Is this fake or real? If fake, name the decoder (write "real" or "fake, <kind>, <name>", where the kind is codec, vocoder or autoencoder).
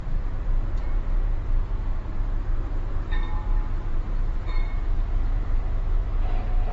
fake, vocoder, BigVGAN v2